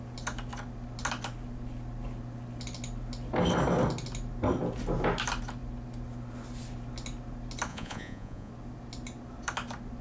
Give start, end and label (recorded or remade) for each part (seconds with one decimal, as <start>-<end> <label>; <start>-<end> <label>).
0.0-7.7 recorded; 7.7-8.5 remade; 8.5-10.0 recorded